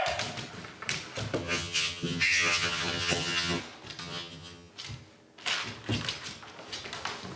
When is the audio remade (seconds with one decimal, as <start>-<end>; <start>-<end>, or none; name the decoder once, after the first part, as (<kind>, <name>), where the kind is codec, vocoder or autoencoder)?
1.4-3.6 (vocoder, HiFi-GAN); 4.0-4.7